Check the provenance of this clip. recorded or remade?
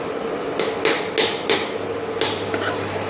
recorded